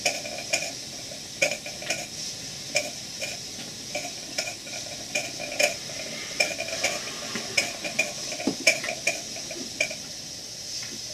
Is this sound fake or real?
real